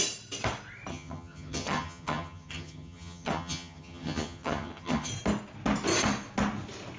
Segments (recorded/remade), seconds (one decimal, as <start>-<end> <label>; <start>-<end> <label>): 0.0-0.9 recorded; 0.9-5.1 remade; 5.1-7.0 recorded